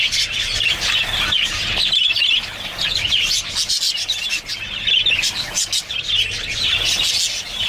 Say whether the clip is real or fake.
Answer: real